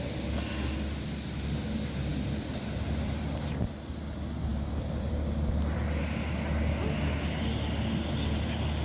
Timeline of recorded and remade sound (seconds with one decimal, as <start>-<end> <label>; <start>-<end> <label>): 0.0-2.1 recorded; 2.1-3.7 remade; 3.7-4.5 recorded; 4.5-5.1 remade; 5.1-8.8 recorded